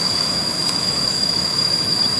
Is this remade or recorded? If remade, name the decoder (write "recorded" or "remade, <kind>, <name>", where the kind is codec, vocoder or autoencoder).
remade, autoencoder, DAC-VAE